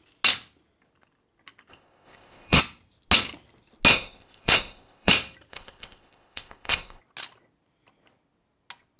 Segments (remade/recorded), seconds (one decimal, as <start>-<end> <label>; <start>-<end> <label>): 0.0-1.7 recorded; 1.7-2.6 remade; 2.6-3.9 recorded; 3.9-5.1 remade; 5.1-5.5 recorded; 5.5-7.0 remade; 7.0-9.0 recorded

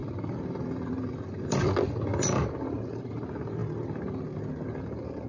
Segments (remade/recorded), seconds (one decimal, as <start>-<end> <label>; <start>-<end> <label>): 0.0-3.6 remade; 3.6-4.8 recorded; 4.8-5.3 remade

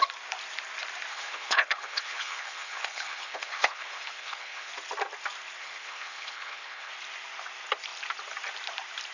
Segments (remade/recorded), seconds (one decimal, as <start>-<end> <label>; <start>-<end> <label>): 0.0-1.1 recorded; 1.1-4.7 remade; 4.7-5.6 recorded; 5.6-6.9 remade; 6.9-9.1 recorded

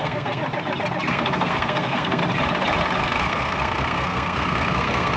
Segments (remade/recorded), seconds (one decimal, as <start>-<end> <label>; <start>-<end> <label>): 0.0-0.4 remade; 0.4-1.1 recorded; 1.1-2.2 remade; 2.2-3.0 recorded; 3.0-5.2 remade